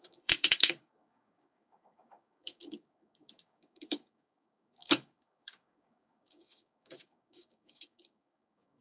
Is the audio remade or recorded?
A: remade